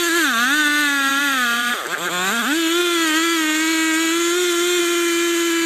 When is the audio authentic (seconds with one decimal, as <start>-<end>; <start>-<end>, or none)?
0.0-1.1; 1.7-5.7